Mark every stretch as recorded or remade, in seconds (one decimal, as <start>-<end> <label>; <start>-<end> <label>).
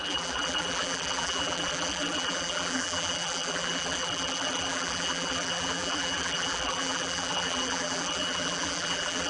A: 0.0-9.3 remade